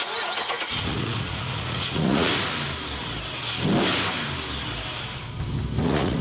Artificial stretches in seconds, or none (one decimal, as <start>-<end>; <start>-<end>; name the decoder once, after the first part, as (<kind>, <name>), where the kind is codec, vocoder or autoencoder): 0.0-2.3 (vocoder, Vocos); 5.8-6.2